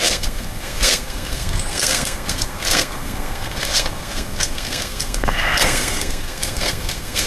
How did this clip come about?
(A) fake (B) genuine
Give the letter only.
A